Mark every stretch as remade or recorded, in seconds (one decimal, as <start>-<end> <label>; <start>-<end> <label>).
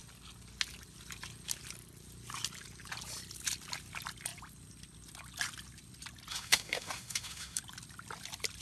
0.0-6.3 recorded; 6.3-7.6 remade; 7.6-8.6 recorded